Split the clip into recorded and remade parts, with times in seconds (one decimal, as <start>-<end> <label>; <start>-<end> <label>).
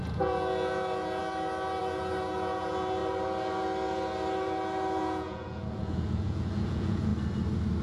0.0-1.2 remade; 1.2-1.8 recorded; 1.8-3.0 remade; 3.0-5.0 recorded; 5.0-7.1 remade; 7.1-7.8 recorded